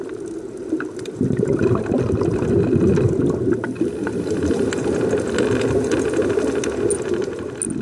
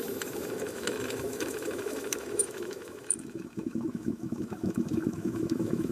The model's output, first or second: second